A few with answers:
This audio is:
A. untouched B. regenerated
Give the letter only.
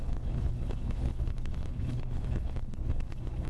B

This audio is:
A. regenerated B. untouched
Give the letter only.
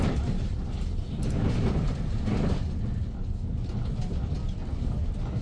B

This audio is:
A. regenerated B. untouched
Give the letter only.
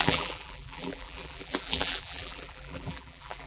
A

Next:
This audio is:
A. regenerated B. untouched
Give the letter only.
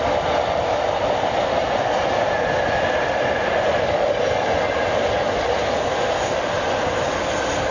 B